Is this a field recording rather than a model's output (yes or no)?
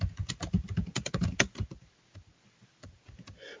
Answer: yes